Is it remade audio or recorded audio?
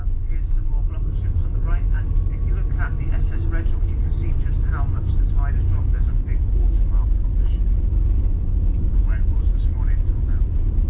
recorded